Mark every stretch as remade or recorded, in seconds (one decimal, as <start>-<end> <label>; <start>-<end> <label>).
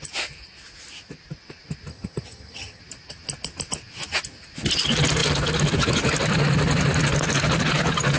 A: 0.0-1.9 recorded; 1.9-2.8 remade; 2.8-8.2 recorded